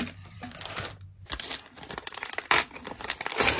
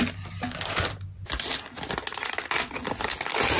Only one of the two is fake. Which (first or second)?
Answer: first